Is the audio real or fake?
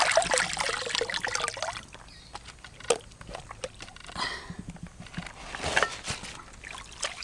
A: real